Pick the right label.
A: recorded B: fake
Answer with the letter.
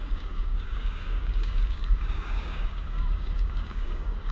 B